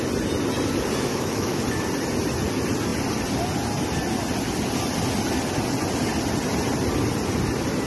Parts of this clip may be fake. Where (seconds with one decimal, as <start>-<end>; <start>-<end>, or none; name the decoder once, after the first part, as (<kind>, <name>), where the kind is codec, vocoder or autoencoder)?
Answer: 1.1-1.6 (autoencoder, DAC-VAE)